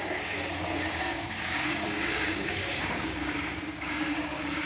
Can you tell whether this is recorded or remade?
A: remade